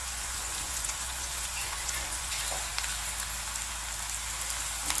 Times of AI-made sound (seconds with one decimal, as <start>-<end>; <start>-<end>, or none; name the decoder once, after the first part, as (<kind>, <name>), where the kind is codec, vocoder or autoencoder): 0.0-2.3 (vocoder, Vocos)